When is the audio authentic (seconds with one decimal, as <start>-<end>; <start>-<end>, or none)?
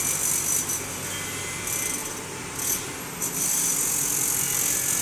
0.0-5.0